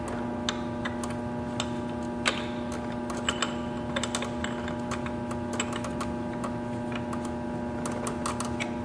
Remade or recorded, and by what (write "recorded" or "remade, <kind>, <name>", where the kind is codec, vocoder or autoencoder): recorded